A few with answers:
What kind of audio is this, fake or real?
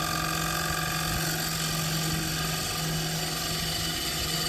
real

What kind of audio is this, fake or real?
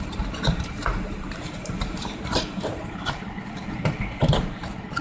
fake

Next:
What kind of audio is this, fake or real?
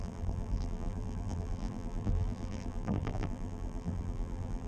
fake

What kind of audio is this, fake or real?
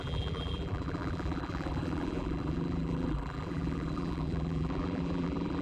fake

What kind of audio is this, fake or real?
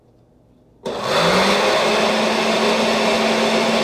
real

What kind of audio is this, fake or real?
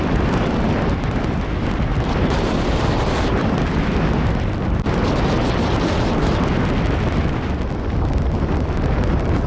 real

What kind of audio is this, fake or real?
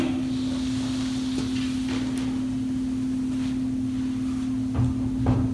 real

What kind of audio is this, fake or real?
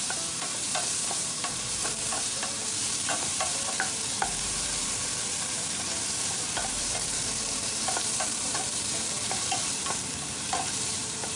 fake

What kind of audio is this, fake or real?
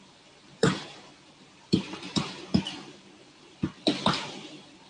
fake